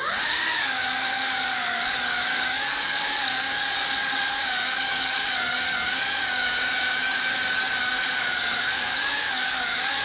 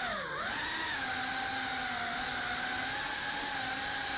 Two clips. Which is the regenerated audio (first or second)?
first